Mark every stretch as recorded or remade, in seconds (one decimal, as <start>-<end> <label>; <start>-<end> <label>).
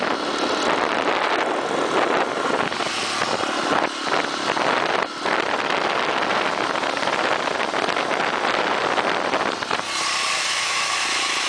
0.0-10.3 recorded; 10.3-11.5 remade